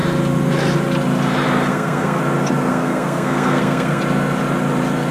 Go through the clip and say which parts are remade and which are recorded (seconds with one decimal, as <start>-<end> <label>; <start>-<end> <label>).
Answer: 0.0-1.7 recorded; 1.7-2.2 remade; 2.2-2.7 recorded; 2.7-4.0 remade; 4.0-5.1 recorded